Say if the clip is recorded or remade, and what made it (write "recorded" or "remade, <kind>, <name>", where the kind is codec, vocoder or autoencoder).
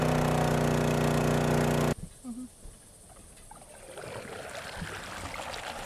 recorded